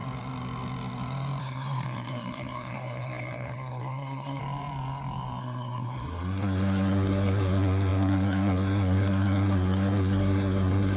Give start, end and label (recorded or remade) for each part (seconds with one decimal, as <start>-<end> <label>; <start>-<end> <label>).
0.0-1.4 recorded; 1.4-4.4 remade; 4.4-5.4 recorded; 5.4-11.0 remade